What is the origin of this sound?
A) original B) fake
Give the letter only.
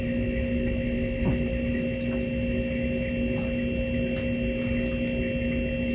A